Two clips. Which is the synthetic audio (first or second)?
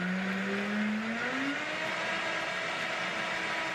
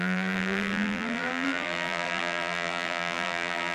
second